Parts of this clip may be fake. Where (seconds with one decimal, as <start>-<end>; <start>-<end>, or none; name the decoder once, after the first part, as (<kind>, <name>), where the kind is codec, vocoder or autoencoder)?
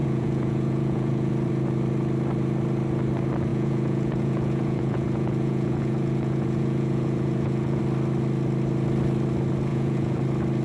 0.0-1.3 (vocoder, Vocos); 3.5-7.8; 9.7-10.2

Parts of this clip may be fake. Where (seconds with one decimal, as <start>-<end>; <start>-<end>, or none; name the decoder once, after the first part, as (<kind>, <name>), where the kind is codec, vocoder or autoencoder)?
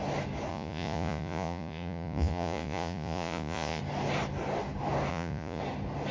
0.5-3.8 (vocoder, Vocos); 5.1-5.6